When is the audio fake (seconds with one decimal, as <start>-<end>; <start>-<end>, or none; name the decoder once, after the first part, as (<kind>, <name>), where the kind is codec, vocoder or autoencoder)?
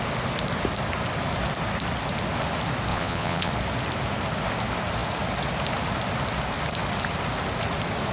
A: 2.9-3.5 (vocoder, Vocos)